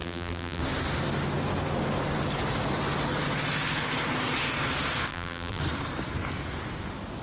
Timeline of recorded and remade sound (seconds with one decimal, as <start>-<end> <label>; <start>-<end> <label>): 0.0-0.6 remade; 0.6-5.1 recorded; 5.1-5.6 remade; 5.6-7.2 recorded